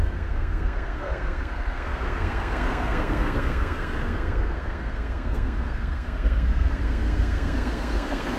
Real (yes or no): no